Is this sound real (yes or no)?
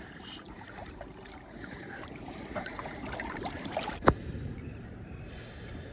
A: no